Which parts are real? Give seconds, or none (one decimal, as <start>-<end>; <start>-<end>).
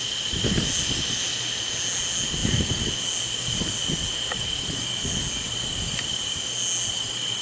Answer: 0.0-7.4